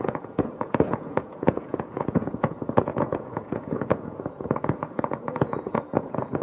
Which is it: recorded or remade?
remade